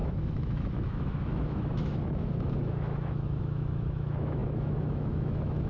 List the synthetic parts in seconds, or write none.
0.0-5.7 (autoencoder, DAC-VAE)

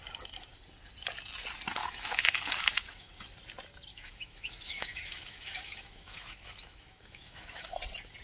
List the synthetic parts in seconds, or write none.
1.8-3.1 (autoencoder, DAC-VAE); 3.9-7.7

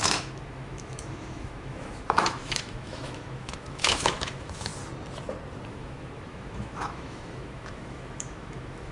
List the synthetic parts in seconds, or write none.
0.0-4.7 (autoencoder, DAC-VAE); 5.7-8.9

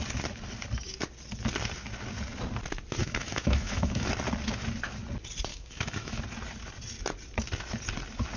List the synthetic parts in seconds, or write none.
3.0-4.1 (autoencoder, DAC-VAE); 5.5-6.2

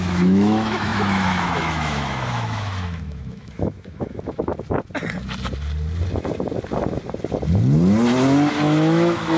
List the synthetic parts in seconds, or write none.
0.0-4.5 (autoencoder, DAC-VAE); 8.5-9.4

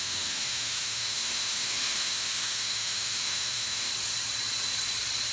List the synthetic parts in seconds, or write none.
0.0-3.9 (autoencoder, DAC-VAE)

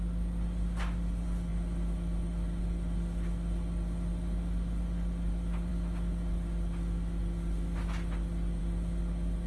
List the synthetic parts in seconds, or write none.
none

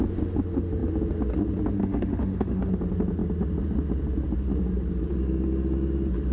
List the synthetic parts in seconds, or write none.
1.8-2.7 (autoencoder, DAC-VAE)